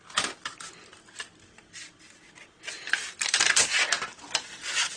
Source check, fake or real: real